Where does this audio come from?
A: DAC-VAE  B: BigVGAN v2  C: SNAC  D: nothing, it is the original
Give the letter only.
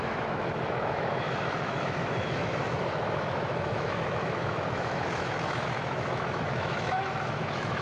A